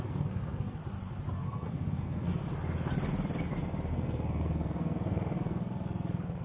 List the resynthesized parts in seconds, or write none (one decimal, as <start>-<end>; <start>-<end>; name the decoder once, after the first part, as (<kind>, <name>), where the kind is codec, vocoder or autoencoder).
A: 0.0-0.8 (codec, SNAC); 1.3-2.3; 3.9-6.4